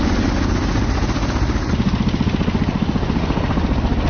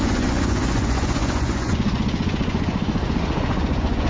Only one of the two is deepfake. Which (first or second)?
second